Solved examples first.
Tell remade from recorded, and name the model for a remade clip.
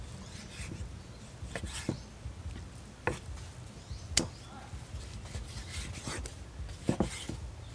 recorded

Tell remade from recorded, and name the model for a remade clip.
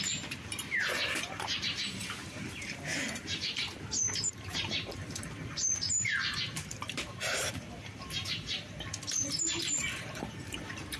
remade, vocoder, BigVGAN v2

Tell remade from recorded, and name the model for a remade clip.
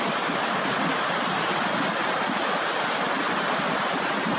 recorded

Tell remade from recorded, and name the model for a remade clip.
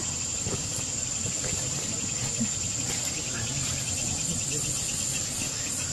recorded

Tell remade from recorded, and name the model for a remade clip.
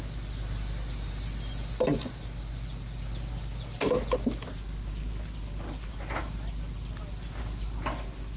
recorded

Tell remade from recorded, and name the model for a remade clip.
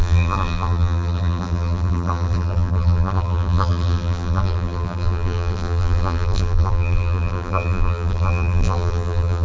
remade, vocoder, BigVGAN v2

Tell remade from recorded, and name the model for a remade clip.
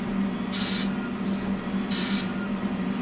recorded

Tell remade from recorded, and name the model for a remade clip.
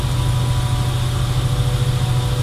recorded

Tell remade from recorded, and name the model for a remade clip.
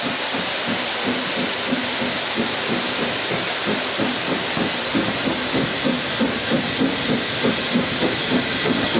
recorded